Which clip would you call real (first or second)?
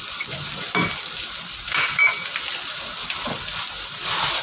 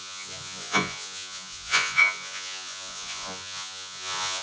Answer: first